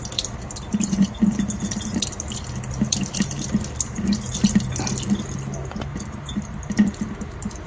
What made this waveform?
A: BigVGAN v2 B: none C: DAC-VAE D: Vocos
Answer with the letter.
B